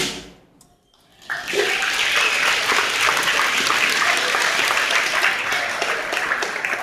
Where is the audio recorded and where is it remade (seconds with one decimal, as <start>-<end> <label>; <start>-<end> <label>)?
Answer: 0.0-6.8 recorded